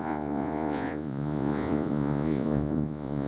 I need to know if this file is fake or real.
fake